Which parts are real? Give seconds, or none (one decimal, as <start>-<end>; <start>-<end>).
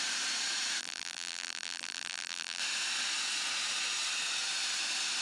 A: 0.0-0.8; 2.6-5.2